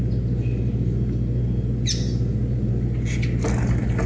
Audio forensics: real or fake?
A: real